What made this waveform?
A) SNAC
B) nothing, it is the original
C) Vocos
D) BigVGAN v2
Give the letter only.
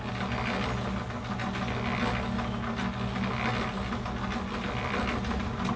B